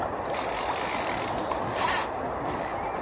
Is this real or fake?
real